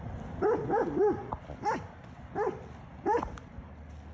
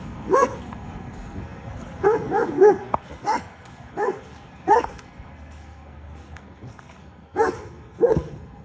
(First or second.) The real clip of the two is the first